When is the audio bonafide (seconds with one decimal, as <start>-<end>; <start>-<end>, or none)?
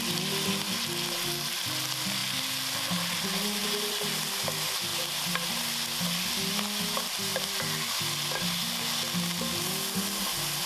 0.0-10.7